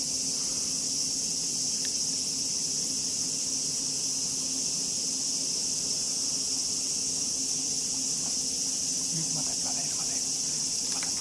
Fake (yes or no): no